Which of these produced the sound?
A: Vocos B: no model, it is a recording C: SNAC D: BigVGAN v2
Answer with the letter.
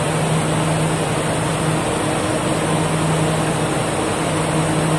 B